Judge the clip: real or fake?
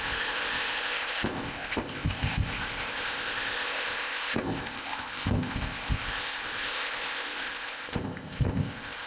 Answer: fake